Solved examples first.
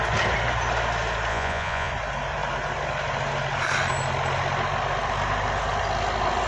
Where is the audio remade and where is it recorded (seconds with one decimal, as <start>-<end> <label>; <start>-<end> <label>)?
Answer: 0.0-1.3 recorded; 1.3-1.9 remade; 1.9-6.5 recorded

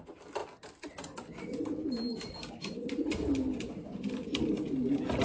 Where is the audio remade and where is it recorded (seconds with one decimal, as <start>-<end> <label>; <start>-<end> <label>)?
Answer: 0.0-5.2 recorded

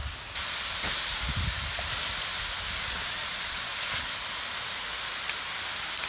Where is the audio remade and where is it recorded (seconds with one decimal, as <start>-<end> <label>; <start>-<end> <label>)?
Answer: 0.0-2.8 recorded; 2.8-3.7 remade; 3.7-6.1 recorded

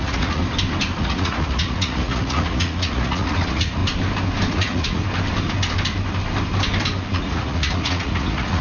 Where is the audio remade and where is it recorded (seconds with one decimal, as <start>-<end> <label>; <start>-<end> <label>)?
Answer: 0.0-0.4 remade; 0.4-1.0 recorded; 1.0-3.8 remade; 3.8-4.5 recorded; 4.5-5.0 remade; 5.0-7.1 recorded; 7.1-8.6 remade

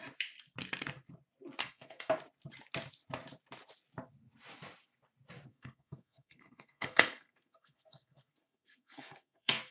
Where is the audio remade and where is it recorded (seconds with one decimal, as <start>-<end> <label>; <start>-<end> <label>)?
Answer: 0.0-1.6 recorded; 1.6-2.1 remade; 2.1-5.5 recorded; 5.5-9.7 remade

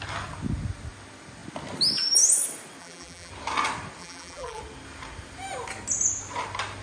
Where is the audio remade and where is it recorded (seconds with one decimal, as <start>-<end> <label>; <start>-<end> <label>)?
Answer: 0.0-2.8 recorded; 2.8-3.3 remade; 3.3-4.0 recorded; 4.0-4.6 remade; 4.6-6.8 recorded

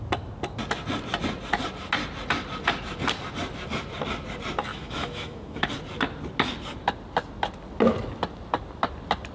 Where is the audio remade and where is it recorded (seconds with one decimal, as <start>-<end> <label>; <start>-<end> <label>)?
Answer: 0.0-4.7 recorded; 4.7-5.7 remade; 5.7-9.3 recorded

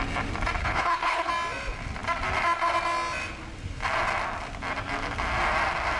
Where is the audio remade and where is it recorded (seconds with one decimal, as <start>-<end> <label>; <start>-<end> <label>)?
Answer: 0.0-0.6 recorded; 0.6-1.3 remade; 1.3-6.0 recorded